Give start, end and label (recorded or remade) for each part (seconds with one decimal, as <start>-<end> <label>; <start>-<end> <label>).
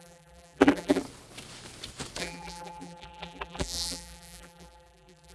0.0-1.0 remade; 1.0-2.2 recorded; 2.2-5.3 remade